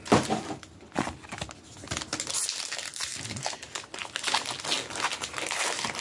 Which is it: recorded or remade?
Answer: recorded